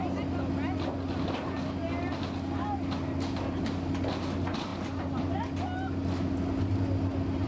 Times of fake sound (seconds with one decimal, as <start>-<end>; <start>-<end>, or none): none